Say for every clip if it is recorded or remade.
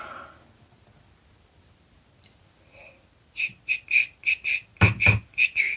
recorded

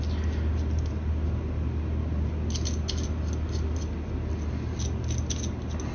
recorded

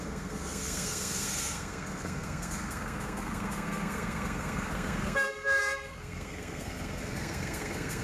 remade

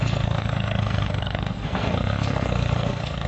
remade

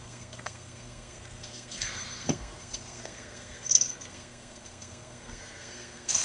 remade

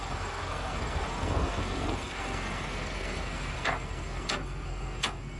remade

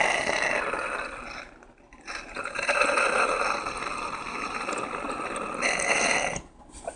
recorded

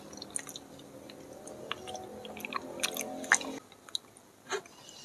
recorded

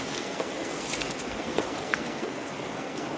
remade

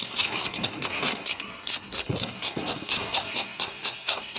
remade